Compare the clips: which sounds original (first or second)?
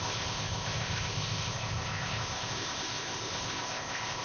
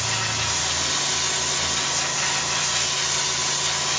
second